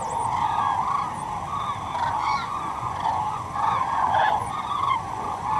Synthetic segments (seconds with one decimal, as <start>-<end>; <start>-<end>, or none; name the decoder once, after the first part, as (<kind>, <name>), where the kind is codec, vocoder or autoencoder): 2.2-5.6 (vocoder, Vocos)